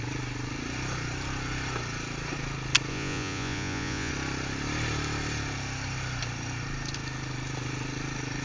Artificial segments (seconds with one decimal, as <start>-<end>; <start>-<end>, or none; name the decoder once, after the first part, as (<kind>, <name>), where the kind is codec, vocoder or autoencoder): 2.9-4.1 (vocoder, Vocos)